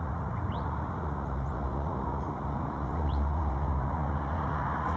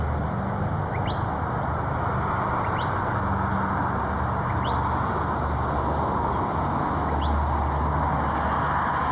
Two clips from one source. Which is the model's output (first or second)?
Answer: first